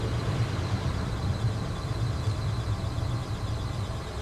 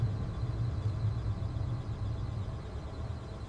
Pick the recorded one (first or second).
second